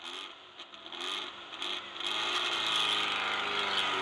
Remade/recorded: recorded